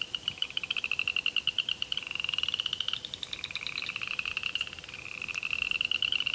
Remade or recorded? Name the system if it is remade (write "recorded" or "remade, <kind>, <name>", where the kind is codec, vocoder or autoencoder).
recorded